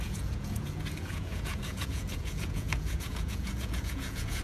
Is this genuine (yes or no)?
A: no